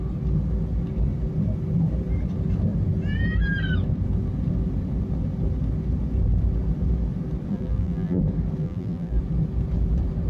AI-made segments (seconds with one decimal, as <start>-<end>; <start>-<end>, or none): 7.5-8.2; 8.6-9.2